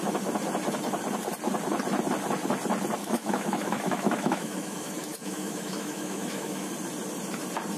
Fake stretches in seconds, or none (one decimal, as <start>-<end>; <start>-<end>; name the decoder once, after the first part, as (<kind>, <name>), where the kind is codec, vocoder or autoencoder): 3.0-6.7 (autoencoder, DAC-VAE)